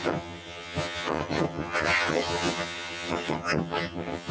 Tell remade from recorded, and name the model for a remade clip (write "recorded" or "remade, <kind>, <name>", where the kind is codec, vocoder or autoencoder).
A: remade, vocoder, HiFi-GAN